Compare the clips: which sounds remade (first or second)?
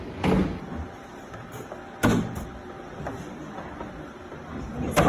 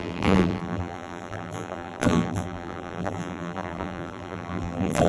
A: second